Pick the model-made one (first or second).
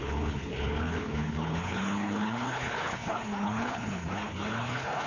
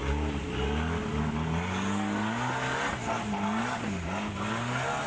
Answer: first